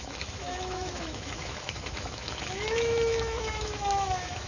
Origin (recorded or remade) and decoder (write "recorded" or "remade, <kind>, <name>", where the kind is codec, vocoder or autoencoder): remade, autoencoder, DAC-VAE